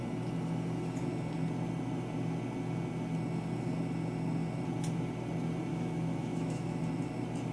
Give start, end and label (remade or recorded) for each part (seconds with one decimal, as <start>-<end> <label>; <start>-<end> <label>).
0.0-5.7 recorded; 5.7-6.8 remade; 6.8-7.5 recorded